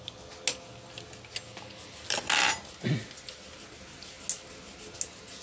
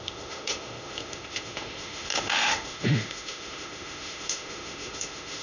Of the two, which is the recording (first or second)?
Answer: first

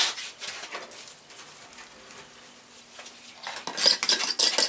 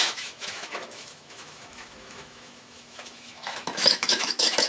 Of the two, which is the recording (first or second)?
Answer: first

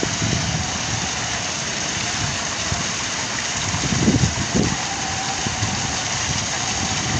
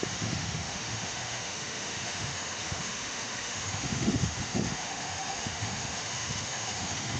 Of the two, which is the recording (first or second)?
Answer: first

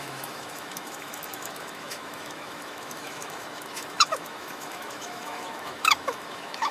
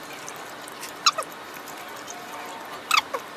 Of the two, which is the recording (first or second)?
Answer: second